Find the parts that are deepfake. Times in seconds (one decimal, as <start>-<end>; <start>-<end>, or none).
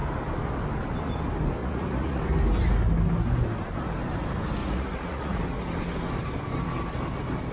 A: 1.6-2.2; 4.6-5.4